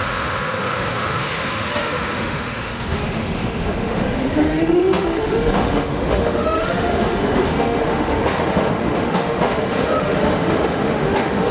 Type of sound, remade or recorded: remade